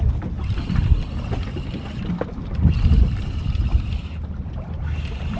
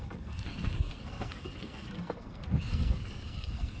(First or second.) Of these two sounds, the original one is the first